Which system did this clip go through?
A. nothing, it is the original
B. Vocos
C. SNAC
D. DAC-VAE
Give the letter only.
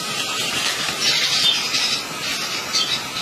A